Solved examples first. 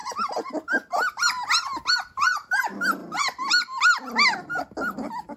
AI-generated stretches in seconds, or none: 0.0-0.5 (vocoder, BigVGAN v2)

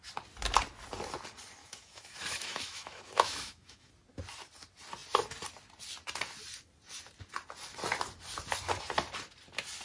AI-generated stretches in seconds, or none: 1.6-3.9 (autoencoder, DAC-VAE)

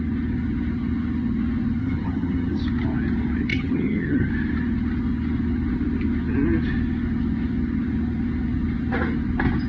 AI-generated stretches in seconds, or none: 1.8-2.6 (vocoder, HiFi-GAN); 3.5-4.3

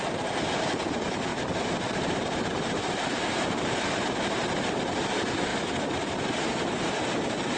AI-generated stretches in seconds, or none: 0.0-7.6 (vocoder, BigVGAN v2)

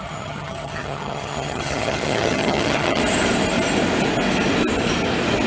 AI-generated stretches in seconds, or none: 0.0-3.0 (vocoder, HiFi-GAN)

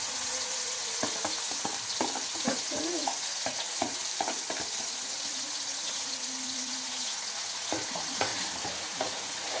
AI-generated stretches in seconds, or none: 0.0-1.7 (vocoder, Vocos); 2.3-4.0; 4.8-8.3; 8.8-9.6

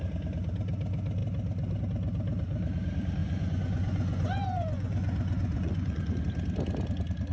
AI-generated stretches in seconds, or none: 3.2-6.2 (vocoder, Vocos)